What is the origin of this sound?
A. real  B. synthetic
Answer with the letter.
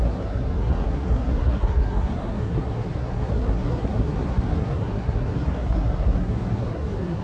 B